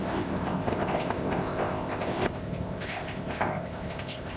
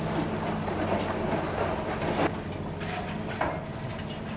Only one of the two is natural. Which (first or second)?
second